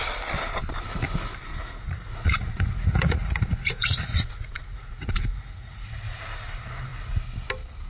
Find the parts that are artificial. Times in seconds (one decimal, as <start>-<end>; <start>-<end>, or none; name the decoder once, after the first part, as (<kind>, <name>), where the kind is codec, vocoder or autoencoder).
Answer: 1.5-6.2 (vocoder, Vocos)